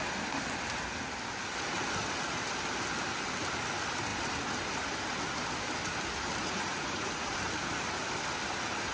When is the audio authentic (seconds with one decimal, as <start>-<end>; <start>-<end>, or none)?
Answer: 0.0-6.4; 7.3-8.9